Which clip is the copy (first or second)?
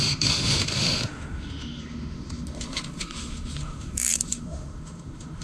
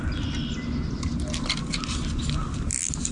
first